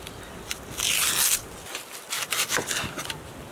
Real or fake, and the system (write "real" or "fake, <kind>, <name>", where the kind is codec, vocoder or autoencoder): real